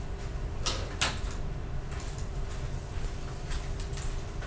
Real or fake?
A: real